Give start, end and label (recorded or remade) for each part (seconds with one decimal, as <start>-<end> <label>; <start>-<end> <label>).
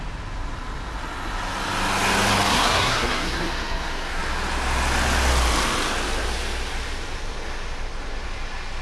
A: 0.0-2.5 recorded; 2.5-4.2 remade; 4.2-8.8 recorded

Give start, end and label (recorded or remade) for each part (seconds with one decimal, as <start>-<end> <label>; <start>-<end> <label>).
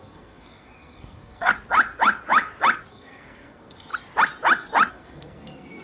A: 0.0-1.5 remade; 1.5-2.9 recorded; 2.9-3.9 remade; 3.9-4.9 recorded; 4.9-5.8 remade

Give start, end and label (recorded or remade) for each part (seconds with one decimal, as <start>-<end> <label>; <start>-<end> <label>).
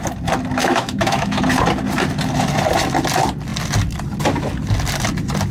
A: 0.0-0.6 recorded; 0.6-1.4 remade; 1.4-5.5 recorded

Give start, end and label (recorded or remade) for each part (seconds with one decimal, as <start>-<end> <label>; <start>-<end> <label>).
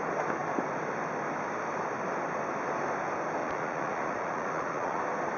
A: 0.0-3.4 recorded; 3.4-5.0 remade; 5.0-5.4 recorded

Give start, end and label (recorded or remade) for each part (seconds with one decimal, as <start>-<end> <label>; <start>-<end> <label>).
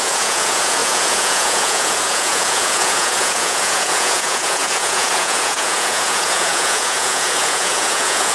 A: 0.0-8.3 remade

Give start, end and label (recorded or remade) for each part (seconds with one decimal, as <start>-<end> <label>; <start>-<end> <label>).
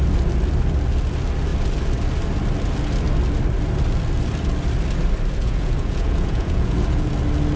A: 0.0-5.4 recorded; 5.4-7.1 remade; 7.1-7.6 recorded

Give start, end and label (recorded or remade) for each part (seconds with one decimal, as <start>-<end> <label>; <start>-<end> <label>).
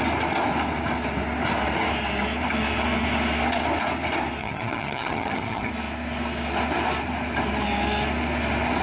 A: 0.0-4.4 recorded; 4.4-5.7 remade; 5.7-8.8 recorded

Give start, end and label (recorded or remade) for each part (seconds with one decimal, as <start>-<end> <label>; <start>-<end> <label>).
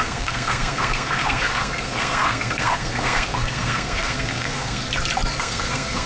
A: 0.0-4.8 remade; 4.8-5.4 recorded; 5.4-6.1 remade